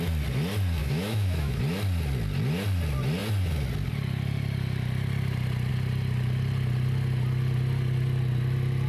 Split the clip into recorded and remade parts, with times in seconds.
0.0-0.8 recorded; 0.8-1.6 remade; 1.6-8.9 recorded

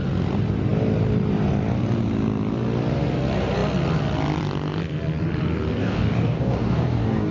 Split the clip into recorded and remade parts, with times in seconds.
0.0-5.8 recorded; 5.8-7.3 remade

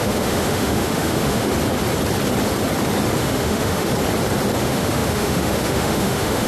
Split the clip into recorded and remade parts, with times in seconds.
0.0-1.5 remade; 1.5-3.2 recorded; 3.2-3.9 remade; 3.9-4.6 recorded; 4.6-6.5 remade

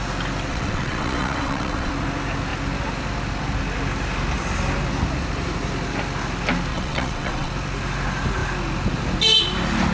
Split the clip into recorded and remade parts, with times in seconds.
0.0-0.5 recorded; 0.5-1.9 remade; 1.9-6.7 recorded; 6.7-7.5 remade; 7.5-9.9 recorded

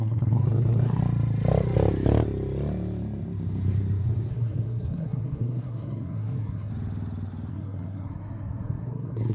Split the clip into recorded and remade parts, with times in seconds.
0.0-1.0 remade; 1.0-4.3 recorded; 4.3-6.7 remade; 6.7-7.5 recorded; 7.5-9.3 remade